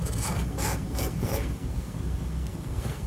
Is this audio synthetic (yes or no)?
yes